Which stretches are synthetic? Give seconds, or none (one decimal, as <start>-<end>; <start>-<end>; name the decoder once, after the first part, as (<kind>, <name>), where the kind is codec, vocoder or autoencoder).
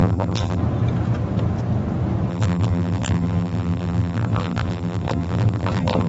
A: 0.0-0.6 (vocoder, BigVGAN v2); 2.3-6.1